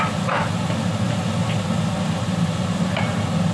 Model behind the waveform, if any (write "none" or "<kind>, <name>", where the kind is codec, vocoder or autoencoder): none